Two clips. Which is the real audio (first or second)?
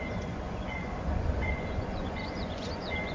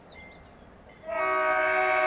second